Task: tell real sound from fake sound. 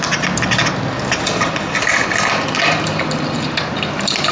real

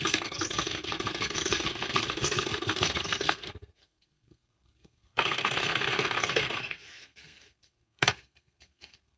fake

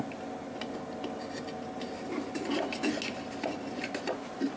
real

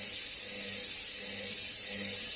real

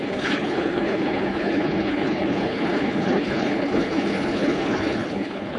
fake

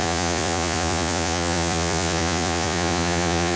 fake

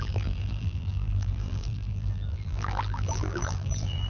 fake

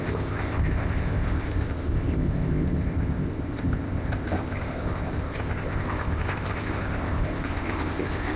fake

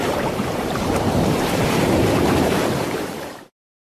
fake